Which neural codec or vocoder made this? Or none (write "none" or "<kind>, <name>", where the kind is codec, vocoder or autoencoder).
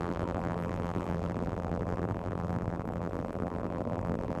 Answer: vocoder, BigVGAN v2